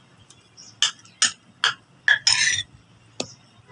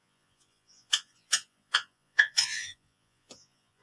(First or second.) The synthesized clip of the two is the second